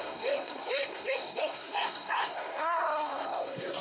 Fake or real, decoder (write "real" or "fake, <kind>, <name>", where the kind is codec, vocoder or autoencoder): fake, codec, SNAC